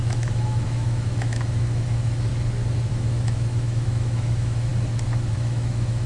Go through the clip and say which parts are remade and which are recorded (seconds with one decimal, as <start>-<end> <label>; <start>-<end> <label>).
0.0-2.3 remade; 2.3-2.9 recorded; 2.9-4.7 remade; 4.7-5.3 recorded; 5.3-6.1 remade